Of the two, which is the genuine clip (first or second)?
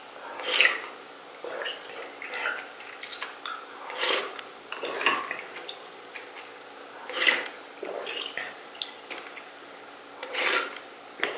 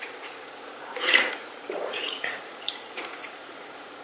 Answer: first